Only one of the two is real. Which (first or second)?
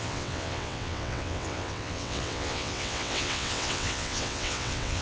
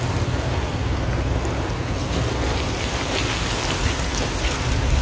second